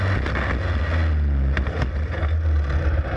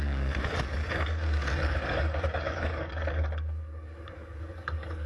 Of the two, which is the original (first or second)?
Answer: first